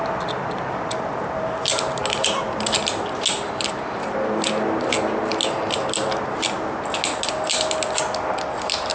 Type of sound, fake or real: real